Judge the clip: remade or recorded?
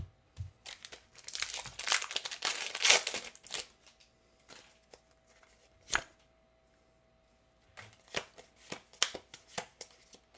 recorded